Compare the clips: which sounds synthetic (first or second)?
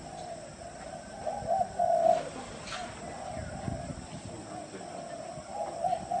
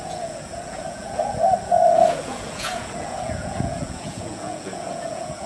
second